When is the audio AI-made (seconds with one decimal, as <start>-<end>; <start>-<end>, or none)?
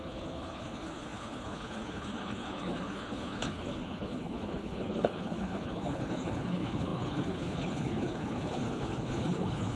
0.0-9.8